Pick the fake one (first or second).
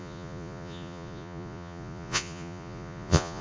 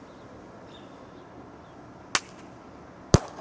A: first